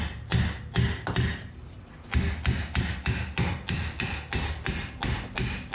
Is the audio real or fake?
real